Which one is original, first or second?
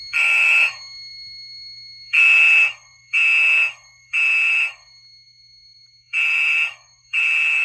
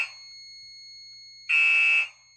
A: second